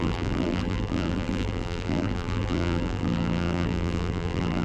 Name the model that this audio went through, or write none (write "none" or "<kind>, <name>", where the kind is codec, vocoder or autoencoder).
vocoder, BigVGAN v2